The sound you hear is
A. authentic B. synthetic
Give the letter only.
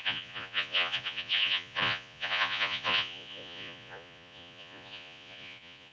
B